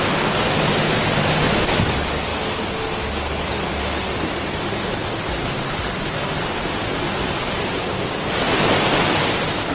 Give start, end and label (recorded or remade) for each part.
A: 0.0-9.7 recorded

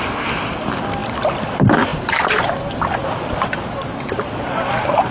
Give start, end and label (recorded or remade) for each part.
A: 0.0-5.1 recorded

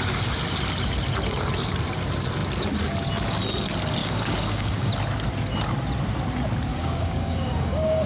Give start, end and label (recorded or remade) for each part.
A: 0.0-4.0 recorded; 4.0-4.9 remade; 4.9-6.7 recorded; 6.7-8.1 remade